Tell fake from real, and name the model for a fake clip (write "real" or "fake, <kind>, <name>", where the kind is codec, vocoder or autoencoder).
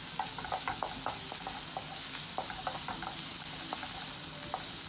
real